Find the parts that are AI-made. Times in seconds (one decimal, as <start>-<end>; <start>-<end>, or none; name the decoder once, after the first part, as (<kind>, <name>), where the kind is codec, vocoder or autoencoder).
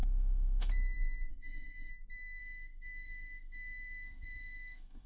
0.0-0.7 (autoencoder, DAC-VAE); 1.3-1.9; 2.4-5.1